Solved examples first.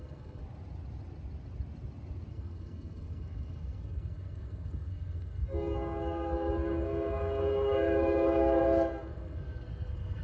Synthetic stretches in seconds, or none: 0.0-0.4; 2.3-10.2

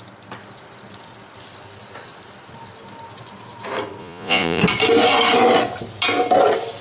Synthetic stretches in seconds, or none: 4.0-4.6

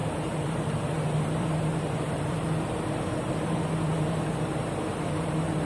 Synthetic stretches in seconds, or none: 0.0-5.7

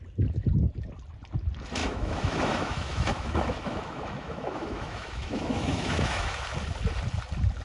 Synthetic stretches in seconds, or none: 1.8-6.4

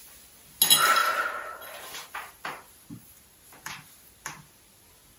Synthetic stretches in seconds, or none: 1.0-4.1

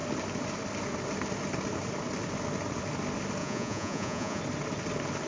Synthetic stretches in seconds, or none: 3.4-4.4

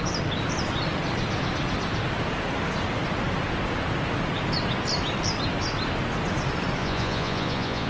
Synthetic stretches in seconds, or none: 6.8-7.9